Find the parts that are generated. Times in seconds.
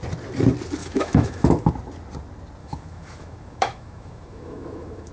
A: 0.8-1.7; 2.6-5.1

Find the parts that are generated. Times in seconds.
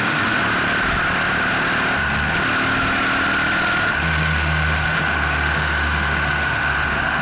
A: 0.0-0.4; 3.8-7.2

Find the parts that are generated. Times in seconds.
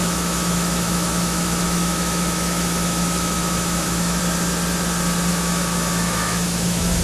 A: 0.0-4.2; 5.3-7.0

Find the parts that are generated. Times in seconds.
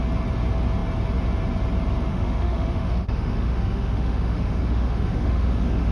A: 2.1-5.9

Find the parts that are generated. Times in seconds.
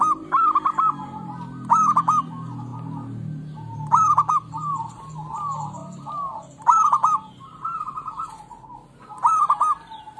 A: none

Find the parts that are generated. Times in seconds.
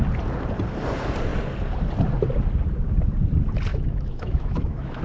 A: 3.7-5.0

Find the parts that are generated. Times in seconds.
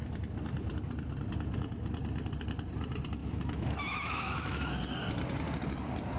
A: 3.2-4.8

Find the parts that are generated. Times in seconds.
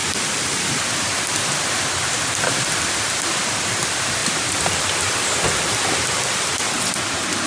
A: none